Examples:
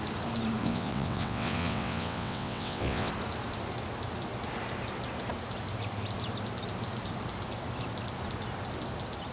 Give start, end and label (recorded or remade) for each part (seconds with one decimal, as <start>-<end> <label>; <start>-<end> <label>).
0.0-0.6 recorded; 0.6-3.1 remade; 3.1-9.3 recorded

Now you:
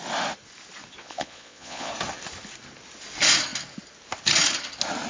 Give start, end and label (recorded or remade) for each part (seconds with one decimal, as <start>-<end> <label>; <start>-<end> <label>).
0.0-1.0 recorded; 1.0-1.9 remade; 1.9-5.1 recorded

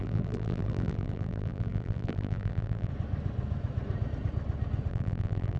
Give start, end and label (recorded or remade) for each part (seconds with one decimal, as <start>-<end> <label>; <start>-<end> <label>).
0.0-2.9 remade; 2.9-4.9 recorded; 4.9-5.6 remade

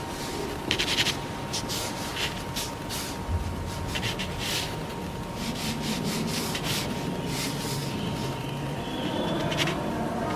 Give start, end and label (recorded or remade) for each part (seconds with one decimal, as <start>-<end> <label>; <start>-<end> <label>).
0.0-7.8 recorded; 7.8-10.4 remade